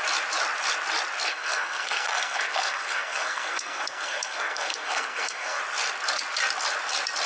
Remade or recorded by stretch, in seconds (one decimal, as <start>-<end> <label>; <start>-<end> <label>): 0.0-1.3 recorded; 1.3-5.6 remade; 5.6-7.3 recorded